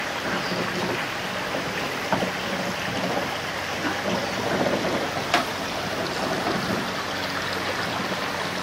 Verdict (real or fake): real